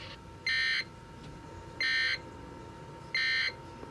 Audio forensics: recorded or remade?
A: recorded